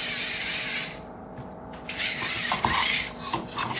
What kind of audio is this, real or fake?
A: fake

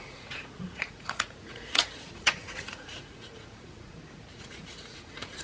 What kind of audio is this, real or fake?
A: fake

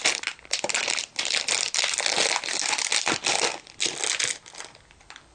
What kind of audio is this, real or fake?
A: real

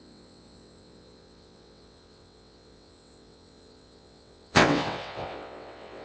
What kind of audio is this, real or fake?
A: fake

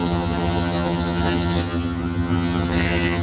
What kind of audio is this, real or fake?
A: fake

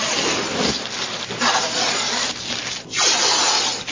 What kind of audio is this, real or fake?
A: real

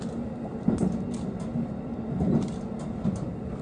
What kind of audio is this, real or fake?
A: real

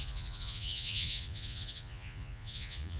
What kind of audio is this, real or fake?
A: fake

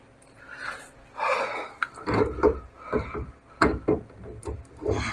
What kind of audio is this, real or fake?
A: real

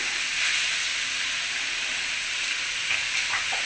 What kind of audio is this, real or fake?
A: real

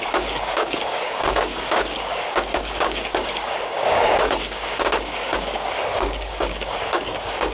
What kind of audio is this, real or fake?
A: fake